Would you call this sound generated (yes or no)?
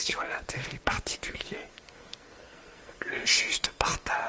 yes